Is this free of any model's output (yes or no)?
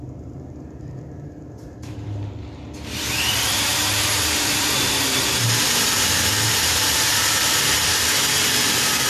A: no